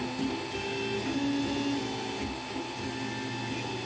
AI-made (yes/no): no